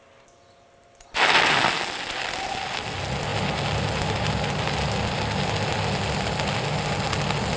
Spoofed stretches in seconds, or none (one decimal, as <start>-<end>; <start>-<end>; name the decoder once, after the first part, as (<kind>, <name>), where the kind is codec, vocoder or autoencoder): none

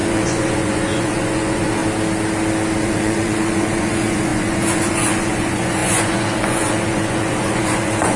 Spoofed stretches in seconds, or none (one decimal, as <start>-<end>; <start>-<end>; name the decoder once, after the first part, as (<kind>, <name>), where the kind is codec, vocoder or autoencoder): 0.0-1.8 (vocoder, Vocos); 2.8-8.2

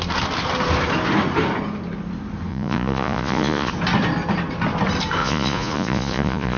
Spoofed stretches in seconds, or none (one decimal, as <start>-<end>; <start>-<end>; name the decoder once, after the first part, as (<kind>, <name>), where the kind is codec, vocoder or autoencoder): 2.5-3.7 (vocoder, Vocos); 5.2-6.6

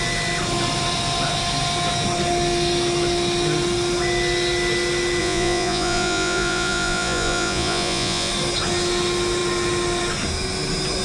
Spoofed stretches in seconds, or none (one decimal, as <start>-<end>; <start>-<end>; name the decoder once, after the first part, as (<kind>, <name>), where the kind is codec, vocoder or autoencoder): 5.2-8.3 (vocoder, Vocos)

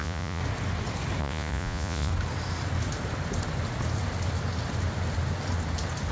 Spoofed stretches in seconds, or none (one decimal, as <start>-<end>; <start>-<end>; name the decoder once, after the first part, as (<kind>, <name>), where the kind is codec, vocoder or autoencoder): 0.0-0.4 (vocoder, Vocos); 1.2-2.1

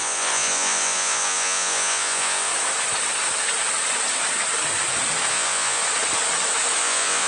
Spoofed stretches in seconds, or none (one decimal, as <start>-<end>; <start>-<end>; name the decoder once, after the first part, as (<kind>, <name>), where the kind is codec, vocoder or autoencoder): 0.0-2.5 (vocoder, Vocos); 5.3-5.8; 6.8-7.3

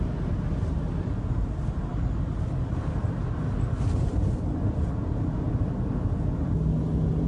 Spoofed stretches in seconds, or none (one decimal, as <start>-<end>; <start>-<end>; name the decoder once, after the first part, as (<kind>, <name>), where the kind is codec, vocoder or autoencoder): none